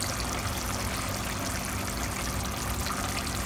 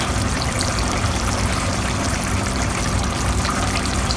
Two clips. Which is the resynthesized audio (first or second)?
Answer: second